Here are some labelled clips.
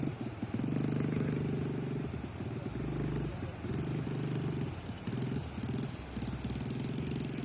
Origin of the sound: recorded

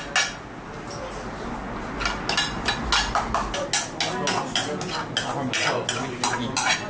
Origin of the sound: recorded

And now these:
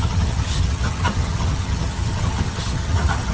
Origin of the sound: remade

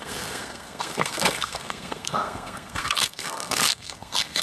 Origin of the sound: remade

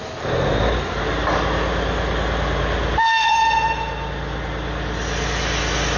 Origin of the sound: recorded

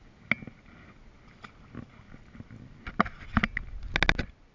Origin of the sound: recorded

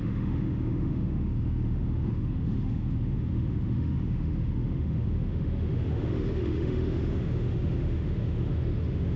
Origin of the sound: remade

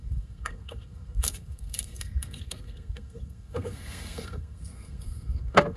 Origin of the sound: remade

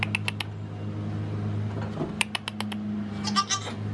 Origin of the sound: recorded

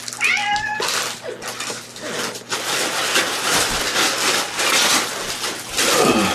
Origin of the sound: recorded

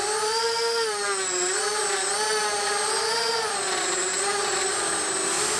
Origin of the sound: recorded